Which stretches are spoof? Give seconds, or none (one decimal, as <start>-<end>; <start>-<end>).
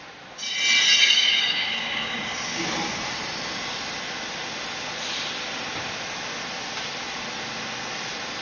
1.0-2.6